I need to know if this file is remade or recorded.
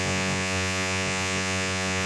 remade